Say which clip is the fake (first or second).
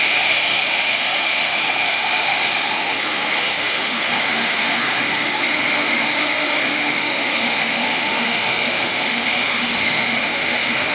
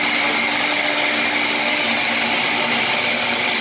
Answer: first